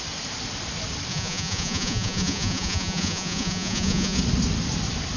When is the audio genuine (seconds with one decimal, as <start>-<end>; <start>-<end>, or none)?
0.0-1.1; 4.2-5.2